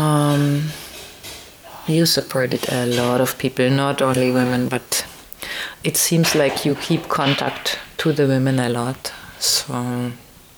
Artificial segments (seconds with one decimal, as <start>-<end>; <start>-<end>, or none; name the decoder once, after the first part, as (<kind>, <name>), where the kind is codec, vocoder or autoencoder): 1.7-2.6 (codec, DAC); 4.0-5.0